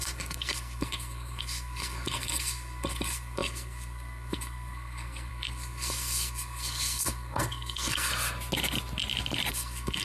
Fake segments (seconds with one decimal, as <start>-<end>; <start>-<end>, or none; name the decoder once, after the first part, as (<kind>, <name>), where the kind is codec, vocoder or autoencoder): 0.0-8.1 (codec, SNAC); 9.5-10.0